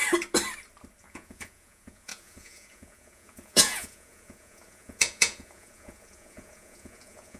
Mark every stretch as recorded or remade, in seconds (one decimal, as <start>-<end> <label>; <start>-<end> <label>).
0.0-1.0 recorded; 1.0-7.4 remade